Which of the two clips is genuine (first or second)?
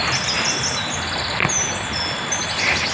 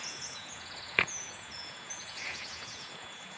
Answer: first